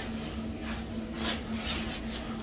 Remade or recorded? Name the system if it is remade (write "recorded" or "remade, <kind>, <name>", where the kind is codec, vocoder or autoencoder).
recorded